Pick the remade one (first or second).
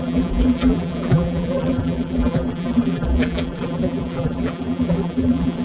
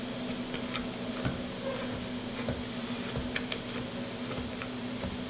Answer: first